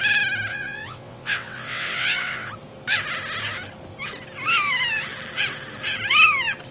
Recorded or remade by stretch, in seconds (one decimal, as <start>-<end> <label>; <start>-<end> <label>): 0.0-0.5 recorded; 0.5-2.5 remade; 2.5-6.7 recorded